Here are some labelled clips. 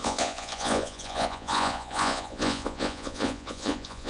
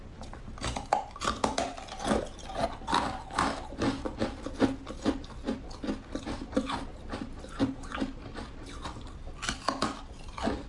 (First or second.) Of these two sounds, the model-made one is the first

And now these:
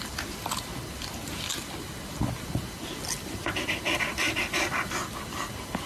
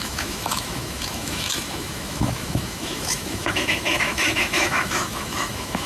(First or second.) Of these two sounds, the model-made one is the second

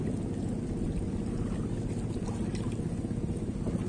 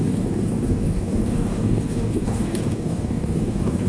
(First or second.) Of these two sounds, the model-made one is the second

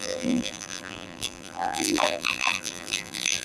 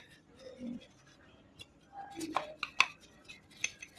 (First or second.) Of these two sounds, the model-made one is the first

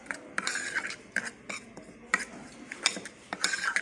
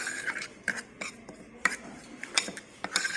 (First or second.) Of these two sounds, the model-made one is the second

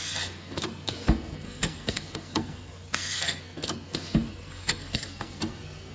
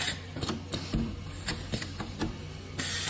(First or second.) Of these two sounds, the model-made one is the first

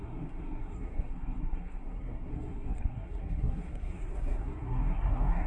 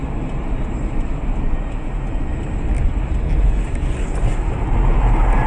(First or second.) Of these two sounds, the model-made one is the first